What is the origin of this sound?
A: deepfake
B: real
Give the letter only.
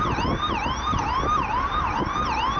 B